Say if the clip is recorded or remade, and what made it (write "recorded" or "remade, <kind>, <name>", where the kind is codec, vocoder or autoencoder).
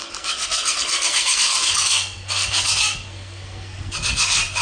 remade, codec, SNAC